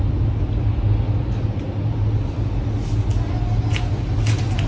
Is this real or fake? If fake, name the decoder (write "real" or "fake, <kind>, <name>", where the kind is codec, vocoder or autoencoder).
real